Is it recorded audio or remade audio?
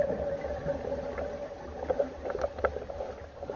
recorded